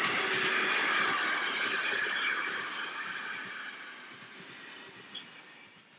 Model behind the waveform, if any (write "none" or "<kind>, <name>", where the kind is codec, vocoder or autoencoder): none